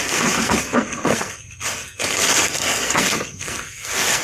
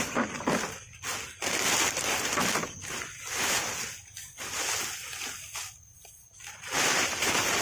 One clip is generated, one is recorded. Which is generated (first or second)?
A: first